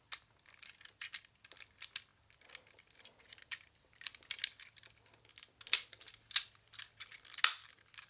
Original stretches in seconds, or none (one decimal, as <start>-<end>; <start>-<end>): 0.0-8.1